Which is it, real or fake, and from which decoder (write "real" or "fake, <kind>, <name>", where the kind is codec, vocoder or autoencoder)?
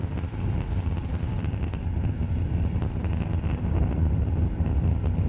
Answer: fake, vocoder, BigVGAN v2